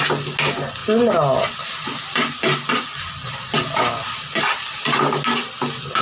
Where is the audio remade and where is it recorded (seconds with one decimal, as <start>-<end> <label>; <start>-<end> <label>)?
0.0-6.0 recorded